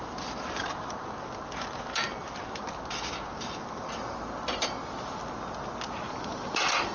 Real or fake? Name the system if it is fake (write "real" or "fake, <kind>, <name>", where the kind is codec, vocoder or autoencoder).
real